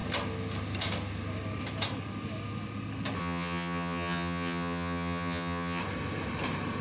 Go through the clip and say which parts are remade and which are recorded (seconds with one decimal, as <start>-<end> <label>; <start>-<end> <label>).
0.0-3.2 recorded; 3.2-5.8 remade; 5.8-6.8 recorded